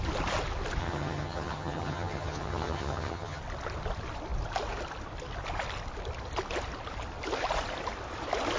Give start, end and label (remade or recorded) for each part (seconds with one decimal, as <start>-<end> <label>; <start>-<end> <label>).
0.0-0.8 recorded; 0.8-3.4 remade; 3.4-8.6 recorded